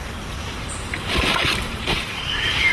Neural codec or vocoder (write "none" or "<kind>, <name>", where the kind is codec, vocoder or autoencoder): vocoder, BigVGAN v2